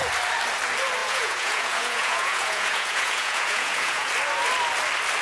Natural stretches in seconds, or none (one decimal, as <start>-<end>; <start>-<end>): 0.0-1.0; 4.1-5.2

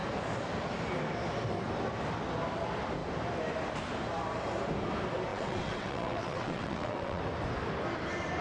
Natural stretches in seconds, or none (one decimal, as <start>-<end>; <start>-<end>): 0.0-5.3; 7.2-8.4

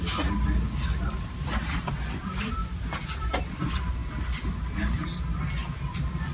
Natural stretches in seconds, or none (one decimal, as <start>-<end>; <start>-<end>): 0.0-5.6

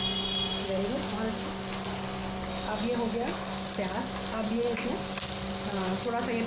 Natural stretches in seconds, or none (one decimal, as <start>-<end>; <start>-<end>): 0.0-6.5

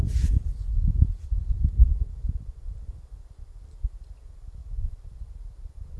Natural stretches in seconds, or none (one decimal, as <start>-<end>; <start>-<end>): 0.0-4.6

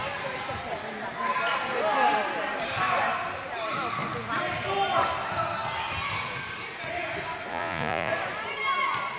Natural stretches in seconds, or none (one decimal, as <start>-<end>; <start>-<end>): 0.0-7.5; 8.1-9.2